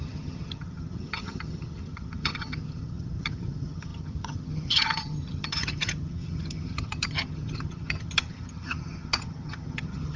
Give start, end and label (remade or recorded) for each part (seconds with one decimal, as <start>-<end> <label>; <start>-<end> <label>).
0.0-10.2 remade